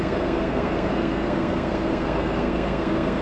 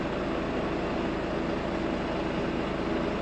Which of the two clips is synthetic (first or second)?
first